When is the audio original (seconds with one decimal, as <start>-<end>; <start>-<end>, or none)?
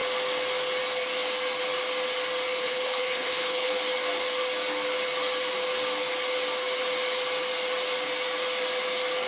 0.0-2.6; 3.7-9.3